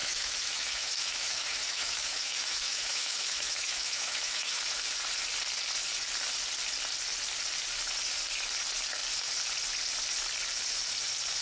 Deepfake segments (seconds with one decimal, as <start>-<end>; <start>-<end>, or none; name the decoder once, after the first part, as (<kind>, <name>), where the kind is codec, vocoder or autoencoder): 0.0-4.6 (autoencoder, DAC-VAE)